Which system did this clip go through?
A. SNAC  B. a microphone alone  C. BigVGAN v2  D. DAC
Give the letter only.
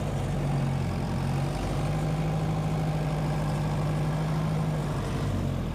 B